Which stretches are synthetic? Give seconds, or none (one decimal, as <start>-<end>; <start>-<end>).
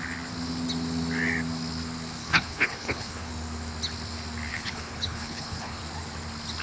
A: 2.2-3.3; 4.5-5.8